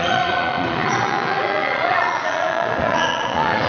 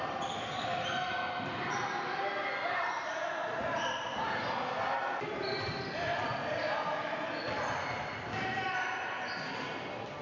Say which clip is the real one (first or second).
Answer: second